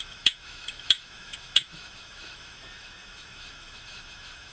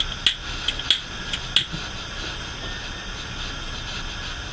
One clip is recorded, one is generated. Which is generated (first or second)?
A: first